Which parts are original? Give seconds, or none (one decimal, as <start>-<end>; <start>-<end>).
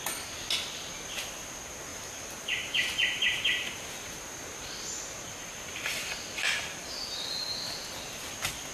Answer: 0.0-1.9; 4.7-8.7